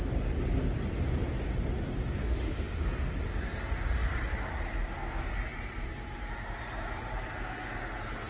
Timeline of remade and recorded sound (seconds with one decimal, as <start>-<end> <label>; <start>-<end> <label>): 0.0-2.2 recorded; 2.2-2.8 remade; 2.8-8.3 recorded